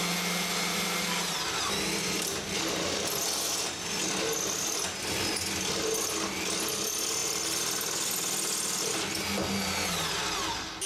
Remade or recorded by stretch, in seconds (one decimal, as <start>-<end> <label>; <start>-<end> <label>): 0.0-10.9 recorded

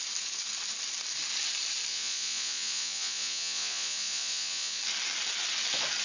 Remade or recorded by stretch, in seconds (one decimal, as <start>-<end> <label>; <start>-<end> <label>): 0.0-1.9 recorded; 1.9-4.8 remade; 4.8-6.0 recorded

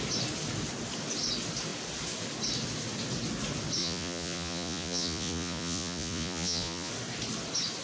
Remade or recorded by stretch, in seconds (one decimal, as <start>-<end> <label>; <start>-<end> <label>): 0.0-3.8 recorded; 3.8-6.9 remade; 6.9-7.8 recorded

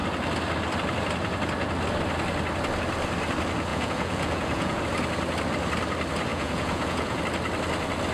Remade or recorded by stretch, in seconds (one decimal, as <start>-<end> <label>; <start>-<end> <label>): 0.0-3.7 recorded; 3.7-4.8 remade; 4.8-6.3 recorded; 6.3-7.2 remade; 7.2-8.1 recorded

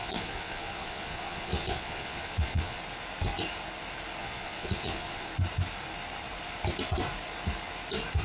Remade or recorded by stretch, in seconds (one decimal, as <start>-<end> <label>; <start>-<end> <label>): 0.0-2.8 remade; 2.8-4.2 recorded; 4.2-5.3 remade; 5.3-8.2 recorded

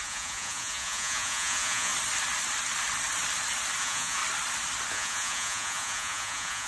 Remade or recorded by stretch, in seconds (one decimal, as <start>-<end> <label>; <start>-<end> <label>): 0.0-1.9 remade; 1.9-3.8 recorded; 3.8-4.2 remade; 4.2-4.9 recorded; 4.9-6.7 remade

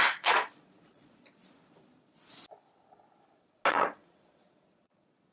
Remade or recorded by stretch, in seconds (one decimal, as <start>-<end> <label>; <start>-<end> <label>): 0.0-1.4 remade; 1.4-3.7 recorded; 3.7-5.3 remade

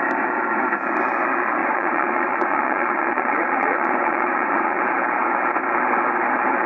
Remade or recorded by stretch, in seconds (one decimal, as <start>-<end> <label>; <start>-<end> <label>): 0.0-1.6 recorded; 1.6-4.8 remade; 4.8-6.7 recorded